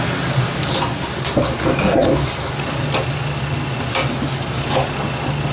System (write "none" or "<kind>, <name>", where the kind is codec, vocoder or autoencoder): none